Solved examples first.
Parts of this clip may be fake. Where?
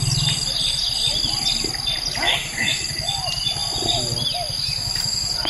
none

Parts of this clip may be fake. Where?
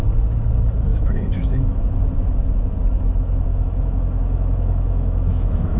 0.9-1.8; 3.5-5.8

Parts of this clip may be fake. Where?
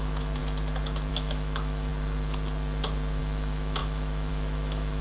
0.0-0.4; 1.1-1.9; 3.2-5.0